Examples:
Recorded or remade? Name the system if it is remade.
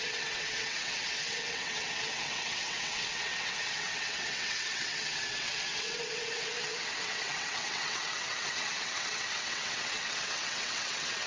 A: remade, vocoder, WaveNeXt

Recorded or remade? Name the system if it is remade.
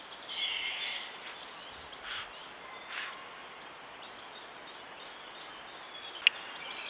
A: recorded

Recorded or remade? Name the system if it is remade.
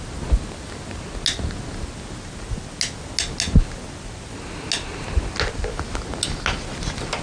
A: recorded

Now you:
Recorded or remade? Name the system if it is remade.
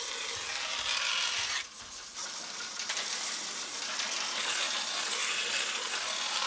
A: recorded